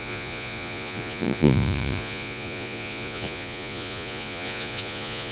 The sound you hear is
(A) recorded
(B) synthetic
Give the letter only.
B